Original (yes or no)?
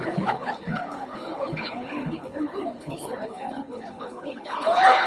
no